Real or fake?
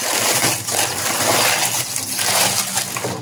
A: real